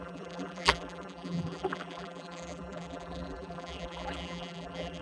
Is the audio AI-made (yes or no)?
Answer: yes